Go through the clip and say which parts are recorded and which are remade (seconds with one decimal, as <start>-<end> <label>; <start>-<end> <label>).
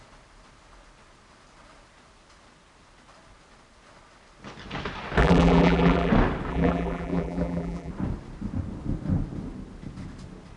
0.0-5.2 recorded; 5.2-6.1 remade; 6.1-6.5 recorded; 6.5-7.9 remade; 7.9-10.6 recorded